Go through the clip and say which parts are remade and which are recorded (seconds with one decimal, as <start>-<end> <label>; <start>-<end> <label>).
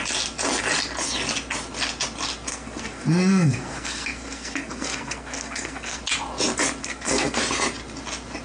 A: 0.0-2.5 recorded; 2.5-6.0 remade; 6.0-6.8 recorded; 6.8-7.4 remade; 7.4-8.4 recorded